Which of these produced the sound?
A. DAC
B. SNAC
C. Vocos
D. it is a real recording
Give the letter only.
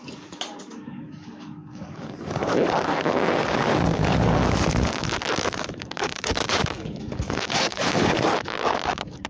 A